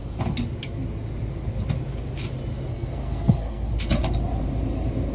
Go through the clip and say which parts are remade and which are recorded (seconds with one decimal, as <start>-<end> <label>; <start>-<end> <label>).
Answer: 0.0-2.7 recorded; 2.7-3.7 remade; 3.7-5.1 recorded